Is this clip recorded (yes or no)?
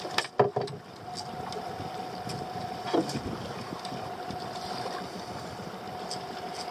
yes